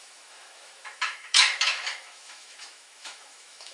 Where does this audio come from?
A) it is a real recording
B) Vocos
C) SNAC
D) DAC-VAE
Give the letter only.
D